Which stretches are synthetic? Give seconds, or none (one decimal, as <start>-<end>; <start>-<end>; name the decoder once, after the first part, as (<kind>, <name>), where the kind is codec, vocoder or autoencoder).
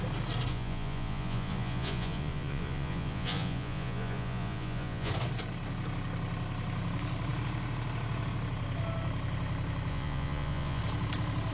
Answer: 0.5-5.1 (vocoder, Vocos); 9.9-10.8